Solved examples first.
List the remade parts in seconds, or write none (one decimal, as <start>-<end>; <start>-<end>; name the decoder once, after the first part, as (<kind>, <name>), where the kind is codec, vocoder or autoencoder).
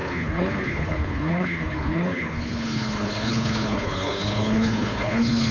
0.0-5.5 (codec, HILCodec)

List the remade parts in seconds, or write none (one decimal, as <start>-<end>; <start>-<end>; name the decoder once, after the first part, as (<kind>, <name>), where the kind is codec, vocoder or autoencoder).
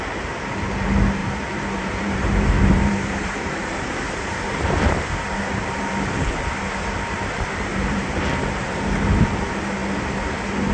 1.2-5.8 (vocoder, BigVGAN v2); 7.7-8.2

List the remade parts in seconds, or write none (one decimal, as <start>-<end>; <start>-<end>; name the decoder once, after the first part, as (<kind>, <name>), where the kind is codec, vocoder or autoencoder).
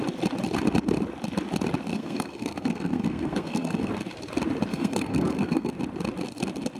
1.9-3.9 (codec, SNAC); 4.7-5.7